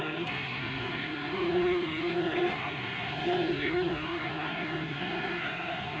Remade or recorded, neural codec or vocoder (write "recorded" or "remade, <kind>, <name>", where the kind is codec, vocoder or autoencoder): remade, codec, SNAC